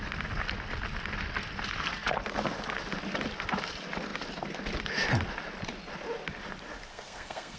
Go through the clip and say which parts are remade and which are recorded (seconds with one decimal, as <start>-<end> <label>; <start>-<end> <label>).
0.0-6.9 recorded; 6.9-7.6 remade